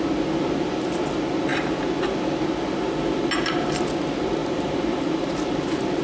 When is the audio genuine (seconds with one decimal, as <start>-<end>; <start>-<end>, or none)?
0.0-4.4